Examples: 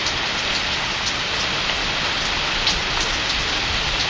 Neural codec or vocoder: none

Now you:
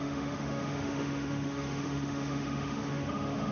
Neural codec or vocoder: autoencoder, DAC-VAE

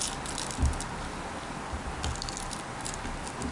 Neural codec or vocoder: none